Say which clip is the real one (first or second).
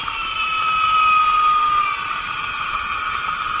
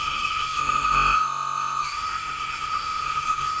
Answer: first